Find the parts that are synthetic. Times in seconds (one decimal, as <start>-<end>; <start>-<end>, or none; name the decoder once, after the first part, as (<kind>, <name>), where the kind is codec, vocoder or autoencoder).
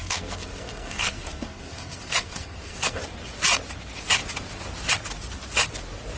0.0-3.0 (codec, SNAC)